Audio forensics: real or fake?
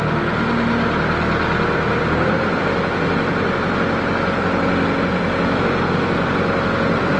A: real